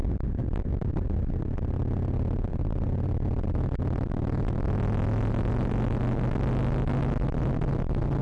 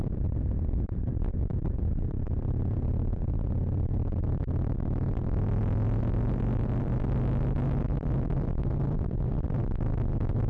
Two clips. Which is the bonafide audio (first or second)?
first